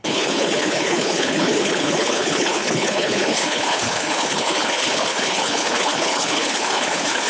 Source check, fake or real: fake